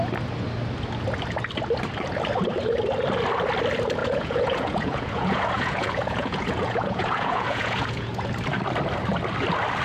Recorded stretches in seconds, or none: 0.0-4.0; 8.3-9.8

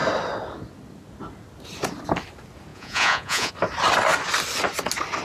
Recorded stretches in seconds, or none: 0.0-2.7; 3.5-5.2

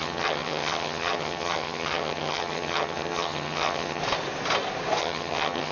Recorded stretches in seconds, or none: 4.0-5.0

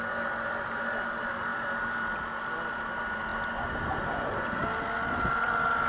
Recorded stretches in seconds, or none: 0.0-5.9